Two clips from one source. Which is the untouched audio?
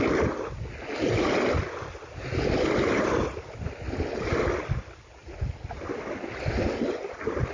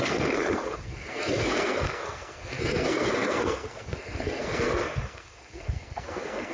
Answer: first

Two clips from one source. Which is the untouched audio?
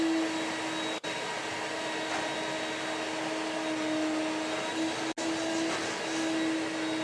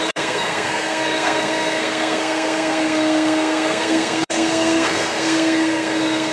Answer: first